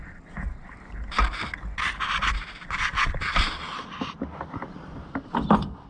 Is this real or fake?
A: real